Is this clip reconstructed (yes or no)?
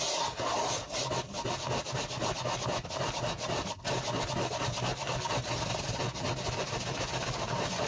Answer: no